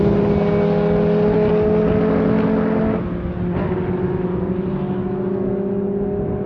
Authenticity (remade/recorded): recorded